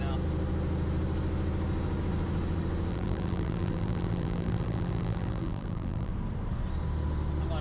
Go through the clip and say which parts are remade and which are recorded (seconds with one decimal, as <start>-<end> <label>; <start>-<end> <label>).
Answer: 0.0-2.9 recorded; 2.9-6.1 remade; 6.1-7.6 recorded